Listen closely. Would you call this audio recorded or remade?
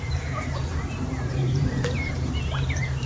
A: remade